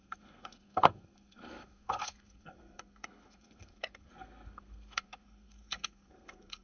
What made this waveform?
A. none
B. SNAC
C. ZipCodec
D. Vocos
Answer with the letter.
B